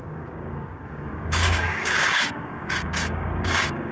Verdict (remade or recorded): remade